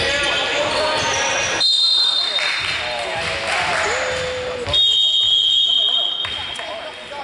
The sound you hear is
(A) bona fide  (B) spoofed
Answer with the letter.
A